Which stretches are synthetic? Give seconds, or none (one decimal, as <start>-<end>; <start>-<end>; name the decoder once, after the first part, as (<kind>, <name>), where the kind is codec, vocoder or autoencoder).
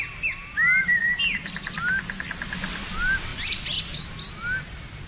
none